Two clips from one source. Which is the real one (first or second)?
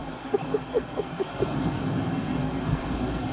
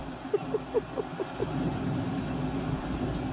second